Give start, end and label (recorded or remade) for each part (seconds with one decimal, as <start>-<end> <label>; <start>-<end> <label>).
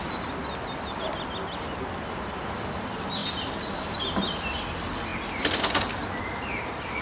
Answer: 0.0-7.0 recorded